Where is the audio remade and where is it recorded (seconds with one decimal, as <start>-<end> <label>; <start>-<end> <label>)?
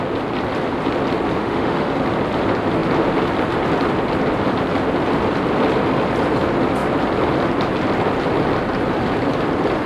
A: 0.0-1.4 recorded; 1.4-1.9 remade; 1.9-9.9 recorded